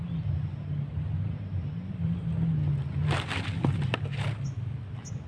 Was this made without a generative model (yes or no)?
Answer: yes